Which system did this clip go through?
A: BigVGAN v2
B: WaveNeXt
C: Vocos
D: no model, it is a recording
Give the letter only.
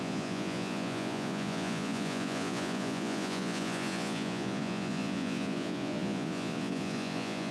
C